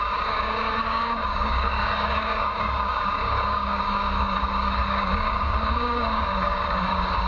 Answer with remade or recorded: remade